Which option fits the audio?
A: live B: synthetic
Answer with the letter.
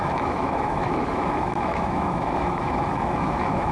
B